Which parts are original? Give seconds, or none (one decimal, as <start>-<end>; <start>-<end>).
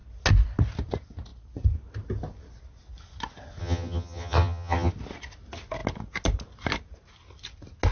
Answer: 0.0-3.6; 4.9-7.9